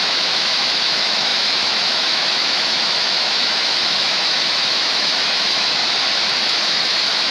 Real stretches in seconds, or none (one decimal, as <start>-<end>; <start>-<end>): 5.8-6.4